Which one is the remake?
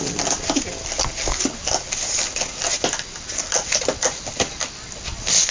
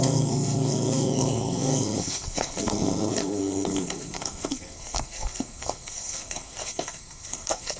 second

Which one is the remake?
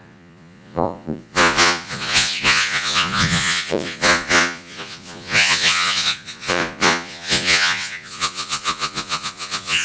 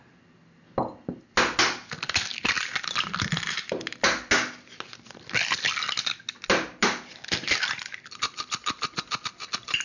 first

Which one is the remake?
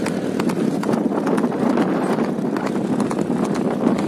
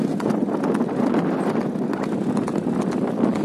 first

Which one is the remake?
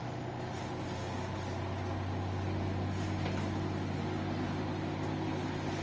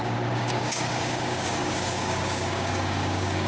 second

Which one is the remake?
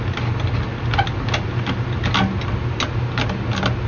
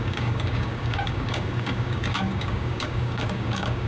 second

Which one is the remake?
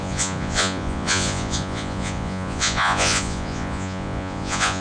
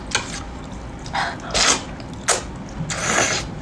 first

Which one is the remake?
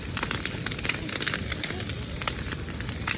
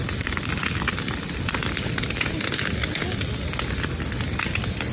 first